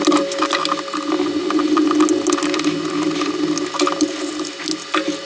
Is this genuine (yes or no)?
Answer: yes